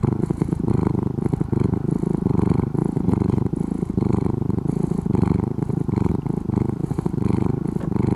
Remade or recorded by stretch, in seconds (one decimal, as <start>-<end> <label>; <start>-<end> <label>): 0.0-0.7 remade; 0.7-2.8 recorded; 2.8-6.1 remade; 6.1-6.8 recorded; 6.8-7.6 remade; 7.6-8.2 recorded